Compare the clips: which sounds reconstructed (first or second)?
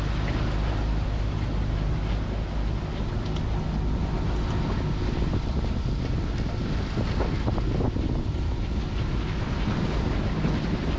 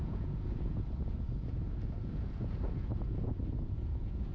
second